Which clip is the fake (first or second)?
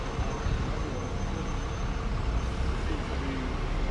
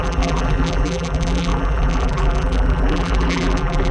second